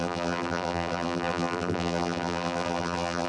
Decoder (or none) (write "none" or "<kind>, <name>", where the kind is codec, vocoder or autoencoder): vocoder, BigVGAN v2